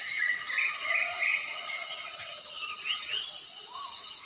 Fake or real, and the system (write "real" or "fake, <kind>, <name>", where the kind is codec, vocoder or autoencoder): fake, vocoder, Vocos